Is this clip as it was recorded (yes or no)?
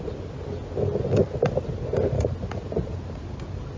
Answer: yes